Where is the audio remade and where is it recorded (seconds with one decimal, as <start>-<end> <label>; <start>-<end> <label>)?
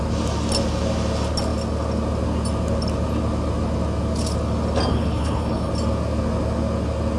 0.0-4.9 recorded; 4.9-5.7 remade; 5.7-7.2 recorded